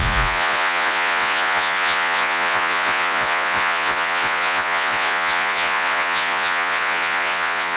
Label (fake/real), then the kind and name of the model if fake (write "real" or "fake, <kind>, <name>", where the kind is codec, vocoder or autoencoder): fake, vocoder, Vocos